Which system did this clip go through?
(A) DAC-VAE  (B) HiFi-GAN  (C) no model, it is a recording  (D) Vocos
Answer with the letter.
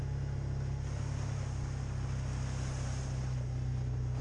C